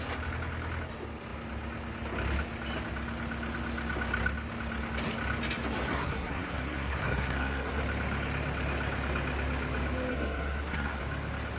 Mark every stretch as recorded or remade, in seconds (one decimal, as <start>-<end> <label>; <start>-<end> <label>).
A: 0.0-5.9 recorded; 5.9-7.8 remade; 7.8-10.1 recorded; 10.1-11.0 remade; 11.0-11.6 recorded